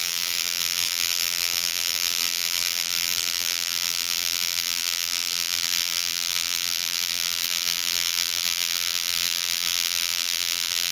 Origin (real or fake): fake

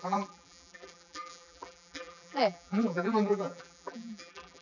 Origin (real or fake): fake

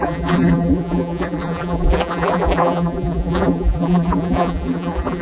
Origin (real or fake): fake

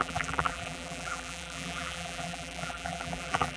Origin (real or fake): fake